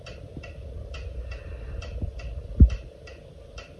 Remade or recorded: recorded